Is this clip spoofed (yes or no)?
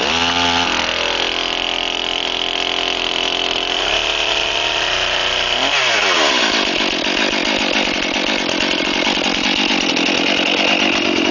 yes